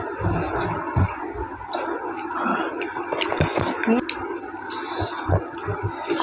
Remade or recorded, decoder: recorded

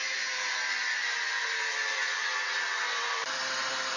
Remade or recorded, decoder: recorded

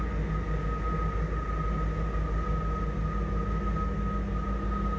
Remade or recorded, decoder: recorded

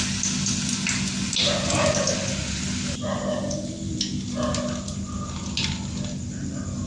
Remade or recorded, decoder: recorded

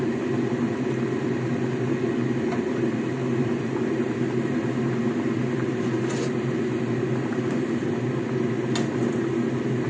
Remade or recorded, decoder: recorded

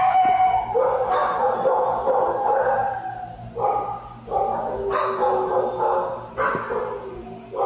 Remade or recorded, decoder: recorded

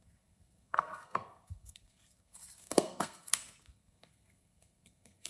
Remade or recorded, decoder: remade, codec, SNAC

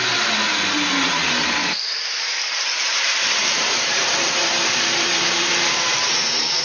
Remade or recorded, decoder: remade, vocoder, BigVGAN v2